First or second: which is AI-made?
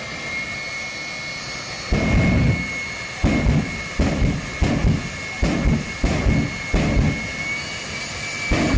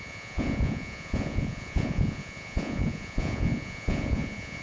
second